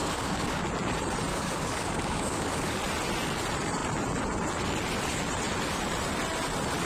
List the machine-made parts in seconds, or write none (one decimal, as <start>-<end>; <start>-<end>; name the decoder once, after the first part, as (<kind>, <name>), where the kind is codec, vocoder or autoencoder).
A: 0.0-0.6 (codec, DAC); 1.3-2.8